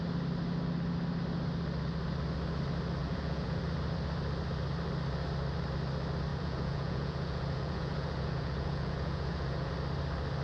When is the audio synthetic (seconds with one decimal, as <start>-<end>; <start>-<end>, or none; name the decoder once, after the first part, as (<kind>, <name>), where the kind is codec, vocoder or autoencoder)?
3.0-3.6 (vocoder, Vocos); 6.3-9.7